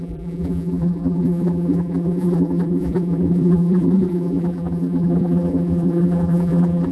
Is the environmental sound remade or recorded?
remade